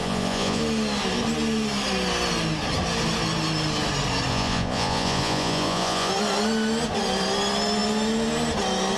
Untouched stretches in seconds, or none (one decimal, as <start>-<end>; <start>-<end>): 0.6-4.3; 6.1-9.0